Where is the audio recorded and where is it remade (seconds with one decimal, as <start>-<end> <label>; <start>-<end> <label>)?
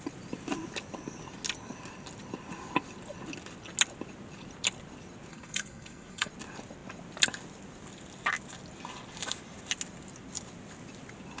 0.0-5.3 recorded; 5.3-6.3 remade; 6.3-11.4 recorded